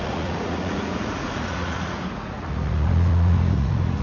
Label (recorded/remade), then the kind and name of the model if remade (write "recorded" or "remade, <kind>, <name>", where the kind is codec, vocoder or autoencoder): remade, vocoder, Vocos